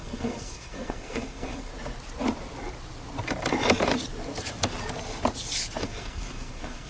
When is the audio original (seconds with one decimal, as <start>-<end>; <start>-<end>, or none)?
1.7-5.8